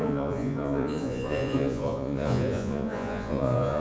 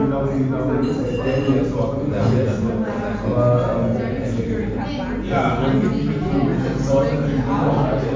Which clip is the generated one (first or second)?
first